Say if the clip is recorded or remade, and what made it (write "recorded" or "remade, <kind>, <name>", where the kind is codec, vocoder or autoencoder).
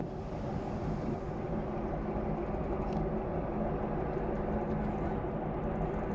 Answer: recorded